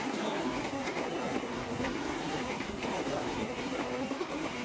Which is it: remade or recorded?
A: remade